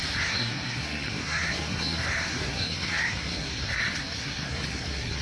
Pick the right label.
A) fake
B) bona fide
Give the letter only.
A